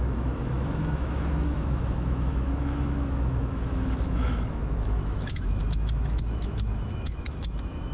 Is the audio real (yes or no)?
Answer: no